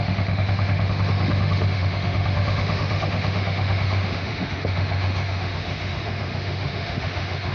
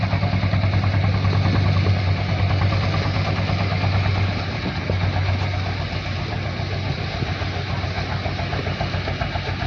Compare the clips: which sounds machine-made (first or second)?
first